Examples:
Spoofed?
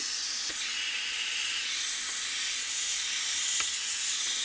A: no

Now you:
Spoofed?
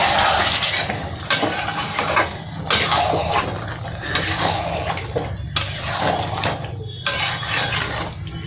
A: no